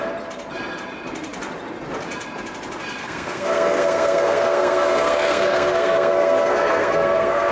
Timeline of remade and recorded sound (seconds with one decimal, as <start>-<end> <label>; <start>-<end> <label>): 0.0-3.0 recorded; 3.0-7.5 remade